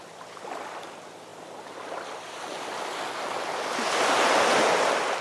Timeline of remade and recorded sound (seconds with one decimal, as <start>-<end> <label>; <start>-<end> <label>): 0.0-5.2 recorded